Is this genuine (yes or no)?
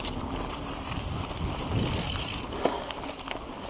yes